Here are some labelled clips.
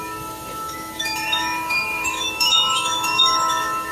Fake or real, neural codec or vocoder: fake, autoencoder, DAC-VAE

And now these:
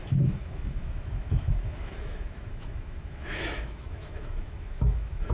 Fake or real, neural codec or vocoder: fake, autoencoder, DAC-VAE